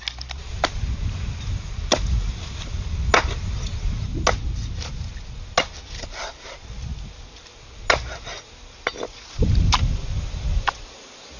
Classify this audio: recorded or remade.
recorded